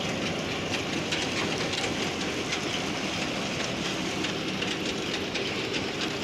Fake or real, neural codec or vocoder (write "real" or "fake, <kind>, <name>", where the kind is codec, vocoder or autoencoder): real